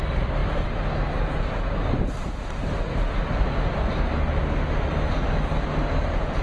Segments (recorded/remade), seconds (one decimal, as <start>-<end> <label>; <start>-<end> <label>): 0.0-6.4 recorded